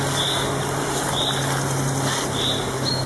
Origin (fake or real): real